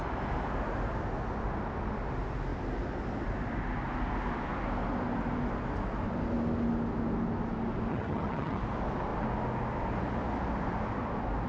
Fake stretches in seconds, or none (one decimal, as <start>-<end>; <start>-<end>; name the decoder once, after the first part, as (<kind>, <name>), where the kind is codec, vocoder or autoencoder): 7.9-8.6 (vocoder, HiFi-GAN)